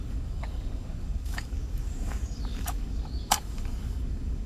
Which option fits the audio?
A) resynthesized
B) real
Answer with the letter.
A